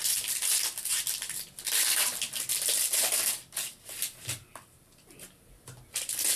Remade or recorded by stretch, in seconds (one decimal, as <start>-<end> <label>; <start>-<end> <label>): 0.0-0.4 remade; 0.4-4.2 recorded; 4.2-6.4 remade